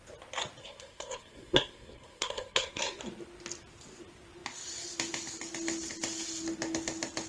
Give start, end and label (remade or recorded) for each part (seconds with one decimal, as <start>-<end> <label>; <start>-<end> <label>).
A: 0.0-0.6 recorded; 0.6-3.0 remade; 3.0-7.3 recorded